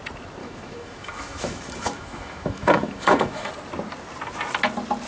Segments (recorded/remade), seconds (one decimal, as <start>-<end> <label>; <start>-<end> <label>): 0.0-0.4 recorded; 0.4-3.5 remade; 3.5-5.1 recorded